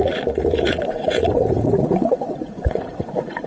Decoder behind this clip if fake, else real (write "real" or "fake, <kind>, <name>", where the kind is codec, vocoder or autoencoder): fake, vocoder, Vocos